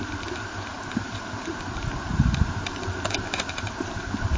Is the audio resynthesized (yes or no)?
yes